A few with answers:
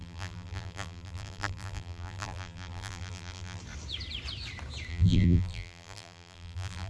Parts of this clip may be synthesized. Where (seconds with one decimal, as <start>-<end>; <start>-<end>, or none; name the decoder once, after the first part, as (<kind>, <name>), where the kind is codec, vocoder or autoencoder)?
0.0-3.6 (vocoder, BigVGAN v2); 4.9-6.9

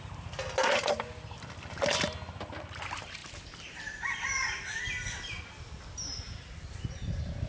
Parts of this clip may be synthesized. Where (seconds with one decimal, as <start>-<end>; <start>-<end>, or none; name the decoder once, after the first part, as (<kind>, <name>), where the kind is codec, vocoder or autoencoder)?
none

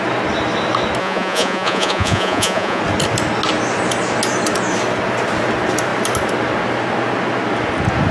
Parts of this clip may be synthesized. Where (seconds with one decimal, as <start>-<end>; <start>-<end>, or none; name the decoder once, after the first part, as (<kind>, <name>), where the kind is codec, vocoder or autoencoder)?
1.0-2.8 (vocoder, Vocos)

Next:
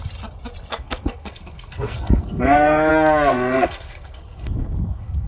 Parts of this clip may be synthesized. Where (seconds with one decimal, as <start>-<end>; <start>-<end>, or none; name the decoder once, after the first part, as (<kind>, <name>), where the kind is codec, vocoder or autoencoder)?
0.7-2.9 (codec, SNAC); 3.3-5.3

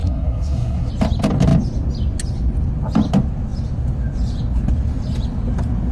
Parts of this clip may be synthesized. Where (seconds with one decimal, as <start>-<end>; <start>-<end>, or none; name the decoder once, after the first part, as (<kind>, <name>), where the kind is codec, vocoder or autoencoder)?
0.0-0.9 (codec, SNAC)

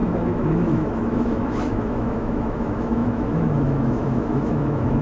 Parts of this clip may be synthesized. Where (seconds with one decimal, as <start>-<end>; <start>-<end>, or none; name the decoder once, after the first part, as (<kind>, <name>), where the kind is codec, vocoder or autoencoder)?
0.0-5.0 (autoencoder, DAC-VAE)

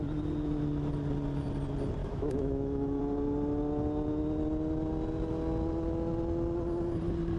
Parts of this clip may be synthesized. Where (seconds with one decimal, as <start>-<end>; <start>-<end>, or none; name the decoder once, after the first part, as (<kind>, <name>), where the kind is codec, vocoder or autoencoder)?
2.0-3.0 (autoencoder, DAC-VAE)